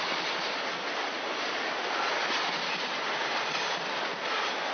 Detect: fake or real real